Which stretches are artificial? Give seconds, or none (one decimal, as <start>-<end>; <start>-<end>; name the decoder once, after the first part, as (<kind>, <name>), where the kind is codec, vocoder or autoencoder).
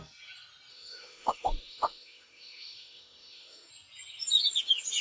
0.7-3.7 (autoencoder, DAC-VAE)